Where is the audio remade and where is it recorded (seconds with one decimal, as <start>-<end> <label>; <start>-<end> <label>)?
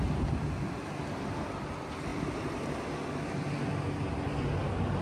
0.0-5.0 recorded